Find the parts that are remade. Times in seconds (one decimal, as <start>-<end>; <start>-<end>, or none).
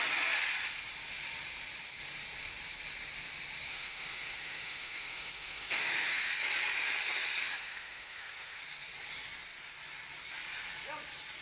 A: 3.7-6.3; 7.4-8.6